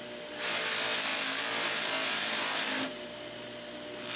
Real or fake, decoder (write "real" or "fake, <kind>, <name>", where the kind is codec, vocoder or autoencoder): real